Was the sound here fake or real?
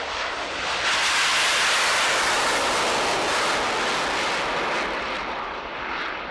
real